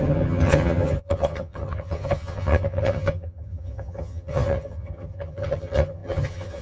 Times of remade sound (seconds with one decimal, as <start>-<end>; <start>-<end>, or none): 0.0-6.6